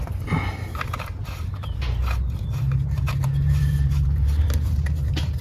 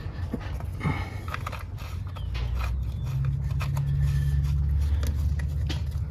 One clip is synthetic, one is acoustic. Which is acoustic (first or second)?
second